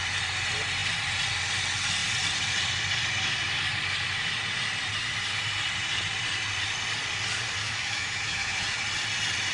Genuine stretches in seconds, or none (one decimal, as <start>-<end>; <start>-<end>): 0.0-7.6; 8.8-9.5